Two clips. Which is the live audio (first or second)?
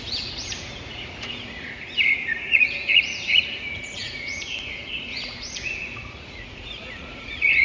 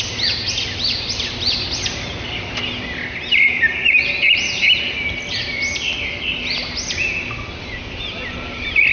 second